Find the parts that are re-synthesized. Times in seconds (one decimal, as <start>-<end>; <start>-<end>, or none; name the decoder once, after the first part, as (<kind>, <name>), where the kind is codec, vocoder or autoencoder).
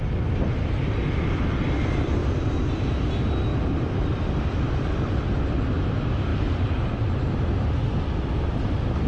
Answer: 3.5-4.7 (vocoder, BigVGAN v2); 6.3-7.1